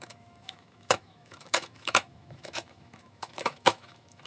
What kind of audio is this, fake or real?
fake